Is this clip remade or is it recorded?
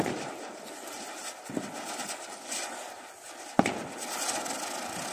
recorded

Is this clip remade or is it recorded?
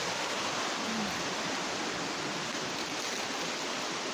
recorded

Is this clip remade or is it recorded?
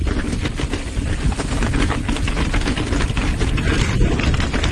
remade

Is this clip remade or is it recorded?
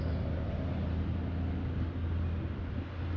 recorded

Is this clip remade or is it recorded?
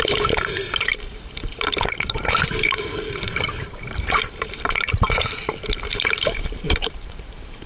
remade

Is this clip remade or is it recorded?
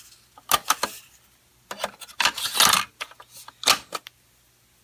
recorded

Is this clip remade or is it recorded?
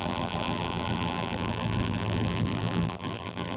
remade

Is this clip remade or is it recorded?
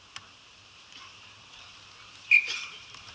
recorded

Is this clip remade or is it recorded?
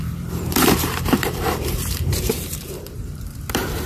remade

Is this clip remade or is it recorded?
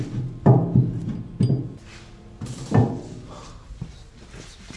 remade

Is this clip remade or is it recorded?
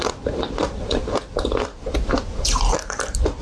remade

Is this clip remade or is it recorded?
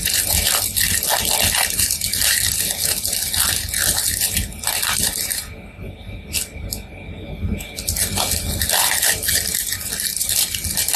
recorded